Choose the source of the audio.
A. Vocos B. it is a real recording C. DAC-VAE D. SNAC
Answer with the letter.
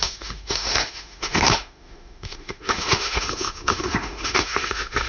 C